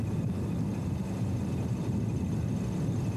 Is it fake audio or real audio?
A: real